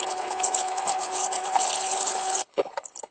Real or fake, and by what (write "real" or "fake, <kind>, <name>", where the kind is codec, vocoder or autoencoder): fake, codec, HILCodec